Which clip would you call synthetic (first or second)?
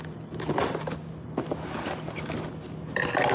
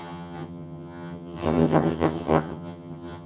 second